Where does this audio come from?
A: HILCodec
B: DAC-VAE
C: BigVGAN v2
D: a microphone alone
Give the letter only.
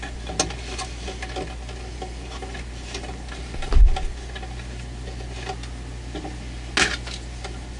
D